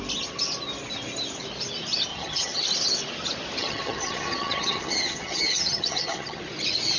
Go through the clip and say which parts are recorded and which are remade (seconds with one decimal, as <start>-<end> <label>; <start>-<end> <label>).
0.0-2.1 recorded; 2.1-2.6 remade; 2.6-3.6 recorded; 3.6-6.4 remade; 6.4-7.0 recorded